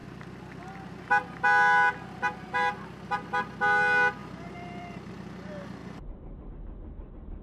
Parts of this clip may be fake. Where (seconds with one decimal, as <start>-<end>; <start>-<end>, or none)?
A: 4.2-5.1; 5.8-6.5